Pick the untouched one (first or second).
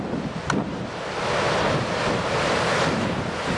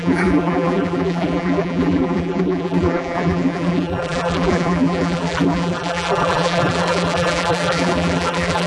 first